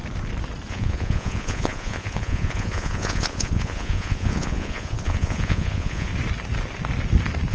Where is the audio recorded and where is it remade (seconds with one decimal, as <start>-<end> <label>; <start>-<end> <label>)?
0.0-0.7 recorded; 0.7-6.1 remade; 6.1-7.5 recorded